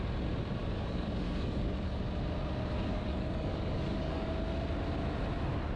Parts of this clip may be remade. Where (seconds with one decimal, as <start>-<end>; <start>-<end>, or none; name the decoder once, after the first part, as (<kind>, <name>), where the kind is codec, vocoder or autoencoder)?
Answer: 0.6-2.0 (codec, DAC); 2.9-4.3